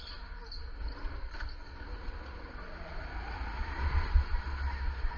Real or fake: real